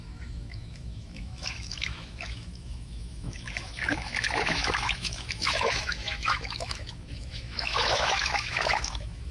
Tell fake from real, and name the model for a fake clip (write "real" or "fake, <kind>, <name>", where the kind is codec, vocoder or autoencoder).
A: fake, autoencoder, DAC-VAE